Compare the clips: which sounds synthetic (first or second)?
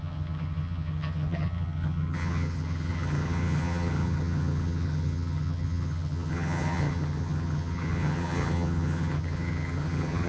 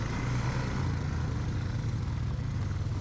first